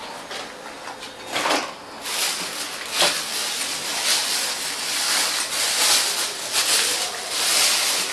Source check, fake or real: real